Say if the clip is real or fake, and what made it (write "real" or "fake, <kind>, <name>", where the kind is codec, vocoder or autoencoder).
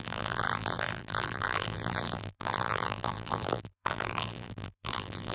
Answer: fake, vocoder, BigVGAN v2